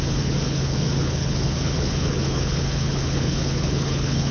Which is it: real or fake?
fake